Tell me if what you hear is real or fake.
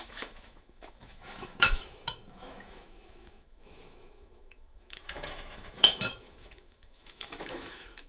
fake